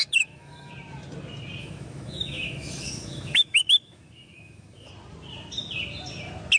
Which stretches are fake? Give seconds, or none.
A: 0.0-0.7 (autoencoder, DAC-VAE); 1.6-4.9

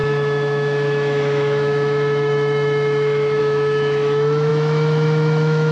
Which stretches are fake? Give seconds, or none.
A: 0.0-5.7 (autoencoder, DAC-VAE)

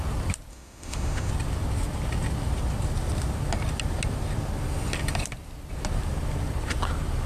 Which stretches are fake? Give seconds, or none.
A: 0.5-1.3 (autoencoder, DAC-VAE)

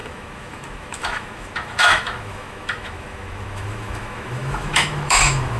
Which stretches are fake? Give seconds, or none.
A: 0.0-5.6 (autoencoder, DAC-VAE)

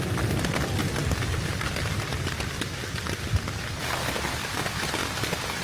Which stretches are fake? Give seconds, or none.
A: none

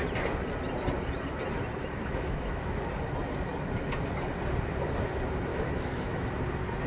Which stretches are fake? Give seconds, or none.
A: 1.8-2.8 (autoencoder, DAC-VAE); 5.5-6.3

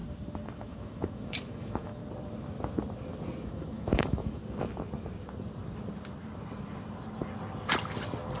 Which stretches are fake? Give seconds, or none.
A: 0.6-2.0 (autoencoder, DAC-VAE); 3.4-4.4

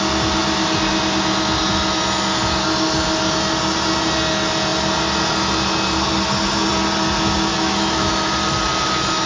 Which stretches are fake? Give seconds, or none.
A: 7.5-8.1 (autoencoder, DAC-VAE)